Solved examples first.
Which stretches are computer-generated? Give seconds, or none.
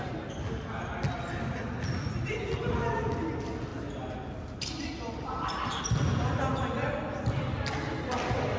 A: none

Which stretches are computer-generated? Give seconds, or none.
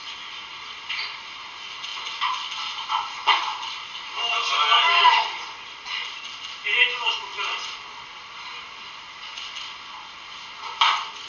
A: none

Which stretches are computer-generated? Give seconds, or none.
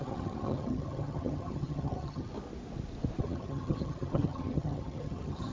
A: 0.0-2.3 (vocoder, HiFi-GAN); 3.2-5.5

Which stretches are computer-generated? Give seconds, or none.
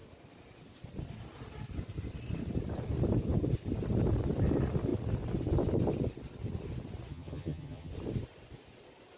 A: 7.1-7.9 (vocoder, HiFi-GAN)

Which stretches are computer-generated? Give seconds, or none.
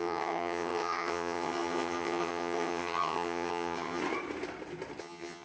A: 0.0-4.0 (vocoder, HiFi-GAN); 5.0-5.4